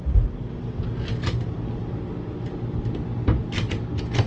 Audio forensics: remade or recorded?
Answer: recorded